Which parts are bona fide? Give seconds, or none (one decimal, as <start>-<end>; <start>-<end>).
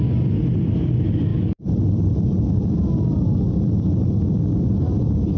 0.0-5.4